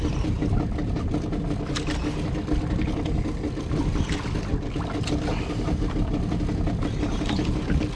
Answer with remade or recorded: recorded